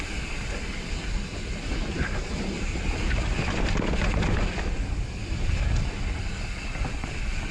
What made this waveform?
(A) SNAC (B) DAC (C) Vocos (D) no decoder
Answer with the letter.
D